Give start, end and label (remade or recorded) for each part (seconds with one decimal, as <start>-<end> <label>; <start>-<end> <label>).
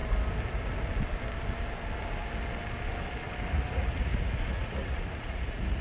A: 0.0-3.5 recorded; 3.5-5.8 remade